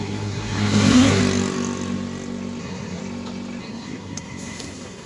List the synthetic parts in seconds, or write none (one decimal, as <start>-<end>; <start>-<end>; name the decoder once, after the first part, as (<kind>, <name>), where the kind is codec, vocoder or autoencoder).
0.0-1.2 (codec, SNAC); 2.6-3.0; 3.6-5.1